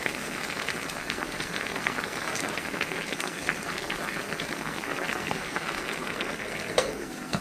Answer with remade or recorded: remade